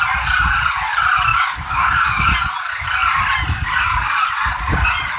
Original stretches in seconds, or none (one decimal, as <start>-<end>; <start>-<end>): 0.0-1.3; 2.3-5.2